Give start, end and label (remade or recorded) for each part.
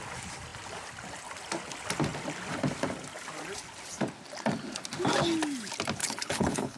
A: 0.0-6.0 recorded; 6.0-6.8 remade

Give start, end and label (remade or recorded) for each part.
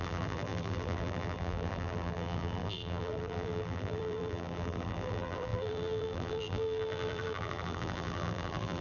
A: 0.0-8.8 remade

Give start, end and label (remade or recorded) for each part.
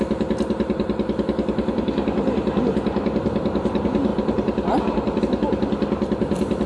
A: 0.0-6.7 recorded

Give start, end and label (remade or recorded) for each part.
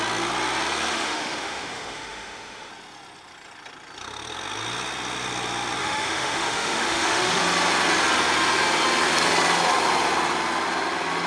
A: 0.0-0.9 recorded; 0.9-2.7 remade; 2.7-5.8 recorded; 5.8-7.4 remade; 7.4-11.3 recorded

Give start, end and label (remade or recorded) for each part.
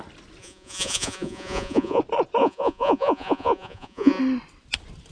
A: 0.0-0.4 recorded; 0.4-2.0 remade; 2.0-2.4 recorded; 2.4-4.2 remade; 4.2-5.1 recorded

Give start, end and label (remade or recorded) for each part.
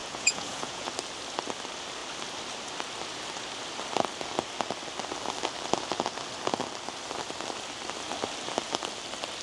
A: 0.0-0.9 remade; 0.9-9.4 recorded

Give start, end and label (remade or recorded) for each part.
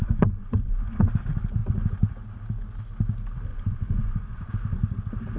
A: 0.0-1.1 remade; 1.1-3.5 recorded; 3.5-4.5 remade; 4.5-5.4 recorded